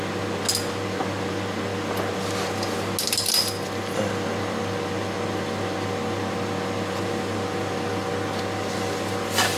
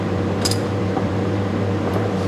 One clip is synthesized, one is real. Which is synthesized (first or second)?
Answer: second